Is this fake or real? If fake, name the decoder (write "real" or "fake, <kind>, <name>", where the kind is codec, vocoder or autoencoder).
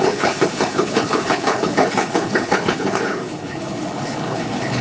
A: fake, codec, HILCodec